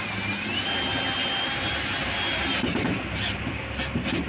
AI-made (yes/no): no